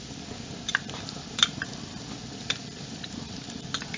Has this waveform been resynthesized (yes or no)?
yes